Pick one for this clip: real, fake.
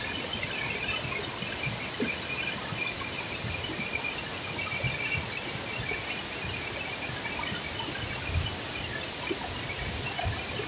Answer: real